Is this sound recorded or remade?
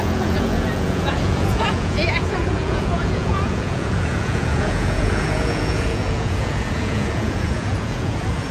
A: remade